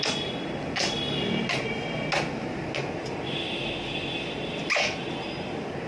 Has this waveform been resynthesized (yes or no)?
no